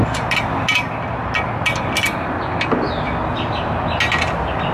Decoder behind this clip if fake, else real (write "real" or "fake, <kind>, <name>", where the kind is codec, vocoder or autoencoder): real